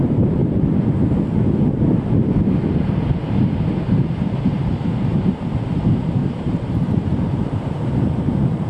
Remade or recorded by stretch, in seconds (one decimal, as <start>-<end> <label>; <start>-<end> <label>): 0.0-0.4 remade; 0.4-3.1 recorded; 3.1-8.7 remade